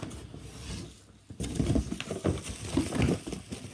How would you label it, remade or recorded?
recorded